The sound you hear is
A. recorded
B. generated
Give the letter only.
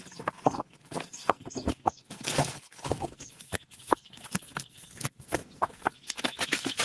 B